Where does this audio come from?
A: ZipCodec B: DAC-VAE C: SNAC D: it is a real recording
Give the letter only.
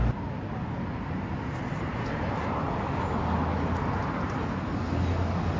D